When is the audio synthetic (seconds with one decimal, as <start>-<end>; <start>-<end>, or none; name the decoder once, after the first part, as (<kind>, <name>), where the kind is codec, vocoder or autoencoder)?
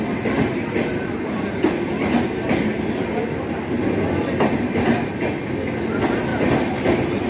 2.7-4.7 (vocoder, BigVGAN v2)